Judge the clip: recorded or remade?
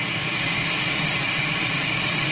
remade